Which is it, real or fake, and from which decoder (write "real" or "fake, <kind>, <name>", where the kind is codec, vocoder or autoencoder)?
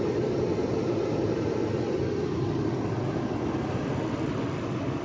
real